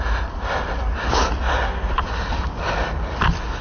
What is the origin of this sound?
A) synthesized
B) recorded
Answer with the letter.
B